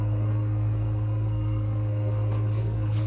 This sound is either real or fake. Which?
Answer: fake